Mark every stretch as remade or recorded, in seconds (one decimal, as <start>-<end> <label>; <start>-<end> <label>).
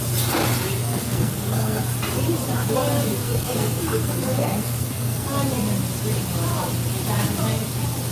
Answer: 0.0-0.8 recorded; 0.8-1.8 remade; 1.8-3.2 recorded; 3.2-5.3 remade; 5.3-8.1 recorded